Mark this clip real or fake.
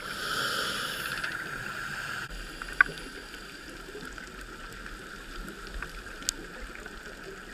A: real